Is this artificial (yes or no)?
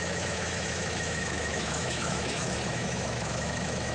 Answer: yes